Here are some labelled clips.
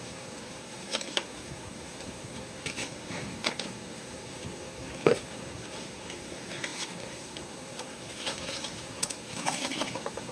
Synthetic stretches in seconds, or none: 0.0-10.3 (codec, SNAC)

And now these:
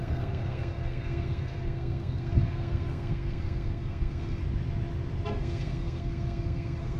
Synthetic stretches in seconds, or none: 0.0-4.4 (codec, SNAC); 5.3-7.0

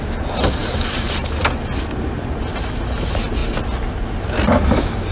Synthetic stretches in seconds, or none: none

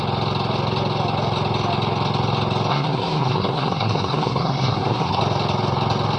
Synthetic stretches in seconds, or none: 2.7-5.2 (codec, SNAC)

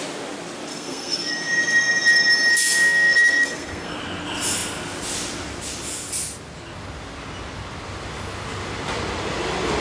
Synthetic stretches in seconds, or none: 0.7-1.3 (codec, SNAC); 2.5-4.0

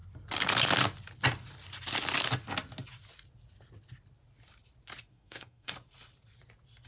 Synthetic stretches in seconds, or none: 5.1-5.7 (codec, SNAC)

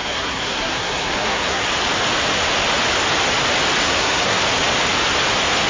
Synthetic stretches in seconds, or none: 0.0-1.7 (codec, SNAC); 3.8-4.4

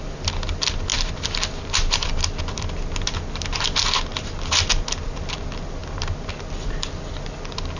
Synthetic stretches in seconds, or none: none